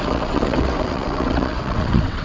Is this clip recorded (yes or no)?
no